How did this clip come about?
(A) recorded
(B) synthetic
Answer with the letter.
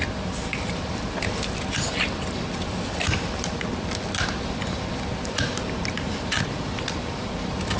B